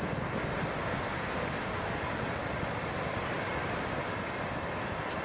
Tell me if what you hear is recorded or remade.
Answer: recorded